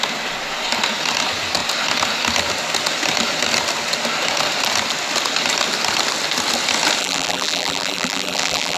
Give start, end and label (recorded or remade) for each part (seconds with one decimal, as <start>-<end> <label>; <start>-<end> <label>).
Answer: 0.0-7.0 recorded; 7.0-8.8 remade